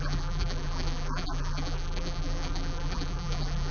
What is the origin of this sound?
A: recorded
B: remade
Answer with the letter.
B